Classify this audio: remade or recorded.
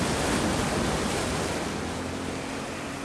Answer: recorded